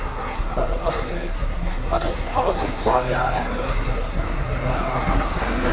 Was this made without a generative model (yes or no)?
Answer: no